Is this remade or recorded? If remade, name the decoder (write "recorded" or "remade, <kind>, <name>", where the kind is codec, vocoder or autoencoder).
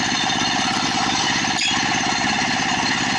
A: remade, vocoder, BigVGAN v2